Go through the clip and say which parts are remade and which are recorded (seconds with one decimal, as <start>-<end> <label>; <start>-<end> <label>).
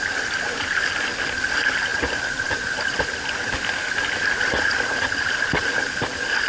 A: 0.0-1.9 recorded; 1.9-5.8 remade; 5.8-6.5 recorded